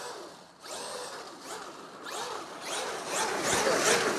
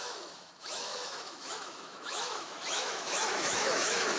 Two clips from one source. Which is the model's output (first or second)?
second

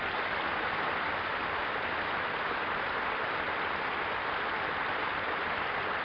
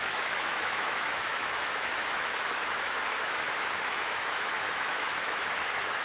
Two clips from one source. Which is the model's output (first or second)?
second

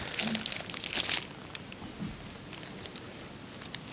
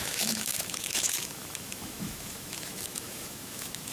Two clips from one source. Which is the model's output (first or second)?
second